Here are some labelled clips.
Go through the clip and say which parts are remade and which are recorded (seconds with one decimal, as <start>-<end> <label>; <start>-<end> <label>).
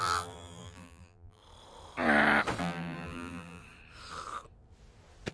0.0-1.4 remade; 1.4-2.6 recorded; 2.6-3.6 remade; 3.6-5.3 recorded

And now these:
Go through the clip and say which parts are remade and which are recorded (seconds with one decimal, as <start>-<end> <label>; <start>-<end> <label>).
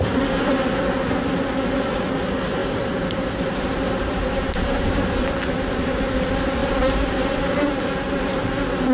0.0-2.6 recorded; 2.6-5.2 remade; 5.2-6.6 recorded; 6.6-8.4 remade; 8.4-8.9 recorded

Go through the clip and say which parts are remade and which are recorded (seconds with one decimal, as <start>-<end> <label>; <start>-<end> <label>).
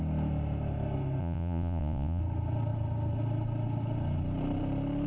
0.0-1.2 recorded; 1.2-2.2 remade; 2.2-5.1 recorded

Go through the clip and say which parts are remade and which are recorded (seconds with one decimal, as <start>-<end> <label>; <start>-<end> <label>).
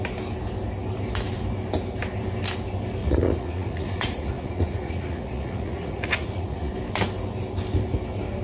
0.0-3.0 recorded; 3.0-6.7 remade; 6.7-8.4 recorded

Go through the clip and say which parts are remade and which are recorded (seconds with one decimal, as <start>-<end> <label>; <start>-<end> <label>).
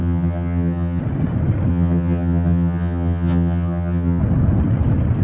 0.0-1.0 remade; 1.0-1.7 recorded; 1.7-4.2 remade; 4.2-5.2 recorded